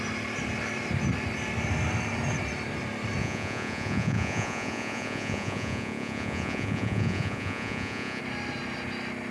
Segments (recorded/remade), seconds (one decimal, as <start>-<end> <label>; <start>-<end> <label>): 0.0-3.2 recorded; 3.2-8.2 remade; 8.2-9.3 recorded

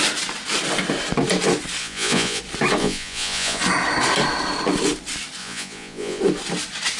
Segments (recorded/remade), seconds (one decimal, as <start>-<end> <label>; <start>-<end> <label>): 0.0-1.8 recorded; 1.8-2.4 remade; 2.4-2.8 recorded; 2.8-3.6 remade; 3.6-5.4 recorded; 5.4-6.2 remade; 6.2-7.0 recorded

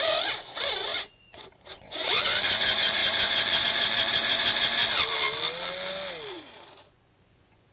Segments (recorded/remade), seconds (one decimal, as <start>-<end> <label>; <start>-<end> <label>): 0.0-4.8 remade; 4.8-6.3 recorded; 6.3-7.7 remade

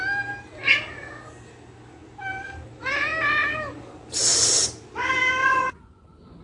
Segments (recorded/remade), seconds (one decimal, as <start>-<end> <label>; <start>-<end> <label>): 0.0-5.4 recorded; 5.4-6.4 remade

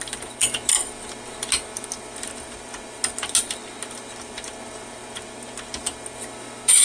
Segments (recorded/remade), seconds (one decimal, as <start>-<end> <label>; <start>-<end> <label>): 0.0-6.8 recorded

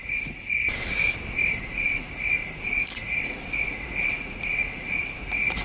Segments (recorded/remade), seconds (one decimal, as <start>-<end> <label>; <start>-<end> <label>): 0.0-0.7 remade; 0.7-1.6 recorded; 1.6-5.6 remade